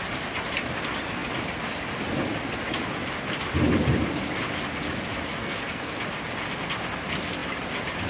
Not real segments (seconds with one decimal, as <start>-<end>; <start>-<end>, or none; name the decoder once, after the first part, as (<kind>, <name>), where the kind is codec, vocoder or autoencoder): 5.4-5.9 (codec, SNAC)